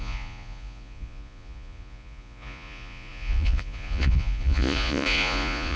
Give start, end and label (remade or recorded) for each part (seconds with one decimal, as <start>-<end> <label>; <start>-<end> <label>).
0.0-5.8 remade